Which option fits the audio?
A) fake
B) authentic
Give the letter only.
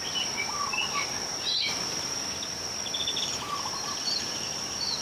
A